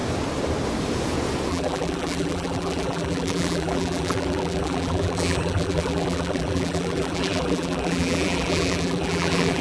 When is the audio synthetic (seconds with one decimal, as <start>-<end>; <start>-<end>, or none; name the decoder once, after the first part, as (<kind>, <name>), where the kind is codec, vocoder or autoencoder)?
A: 1.5-9.6 (vocoder, BigVGAN v2)

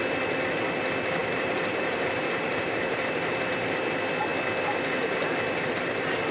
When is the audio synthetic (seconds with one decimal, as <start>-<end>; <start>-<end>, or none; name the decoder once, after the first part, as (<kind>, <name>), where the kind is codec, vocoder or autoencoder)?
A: 1.2-3.8 (vocoder, BigVGAN v2)

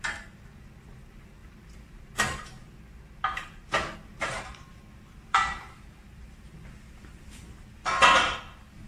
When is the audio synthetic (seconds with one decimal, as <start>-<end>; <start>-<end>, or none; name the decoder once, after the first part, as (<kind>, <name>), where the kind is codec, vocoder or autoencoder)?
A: 4.1-7.6 (vocoder, BigVGAN v2)

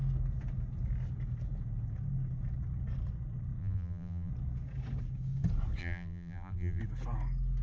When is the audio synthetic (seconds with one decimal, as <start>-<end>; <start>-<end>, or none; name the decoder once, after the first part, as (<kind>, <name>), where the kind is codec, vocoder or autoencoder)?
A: 3.6-4.3 (vocoder, BigVGAN v2); 5.8-6.8